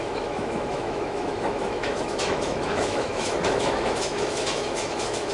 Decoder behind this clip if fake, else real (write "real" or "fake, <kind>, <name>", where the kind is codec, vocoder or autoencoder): fake, autoencoder, DAC-VAE